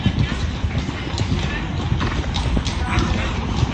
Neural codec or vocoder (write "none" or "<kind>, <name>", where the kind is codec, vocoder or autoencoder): none